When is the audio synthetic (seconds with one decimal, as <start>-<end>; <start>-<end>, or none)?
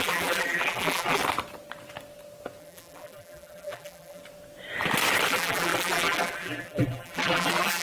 0.0-1.2; 2.6-4.2; 5.3-7.8